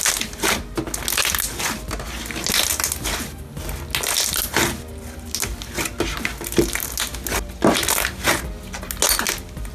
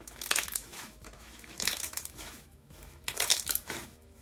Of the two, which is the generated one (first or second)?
second